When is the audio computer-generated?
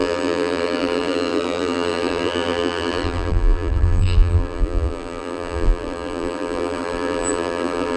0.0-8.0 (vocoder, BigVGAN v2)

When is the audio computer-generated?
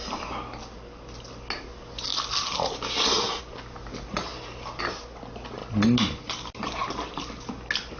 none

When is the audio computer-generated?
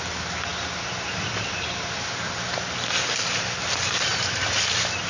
4.1-4.6 (vocoder, BigVGAN v2)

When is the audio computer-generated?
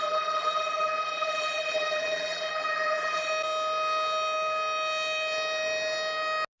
0.0-3.3 (vocoder, BigVGAN v2)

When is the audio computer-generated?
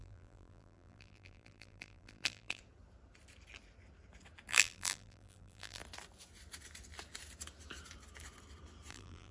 0.0-2.6 (vocoder, BigVGAN v2); 4.5-5.8; 8.9-9.3